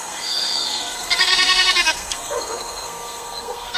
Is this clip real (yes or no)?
no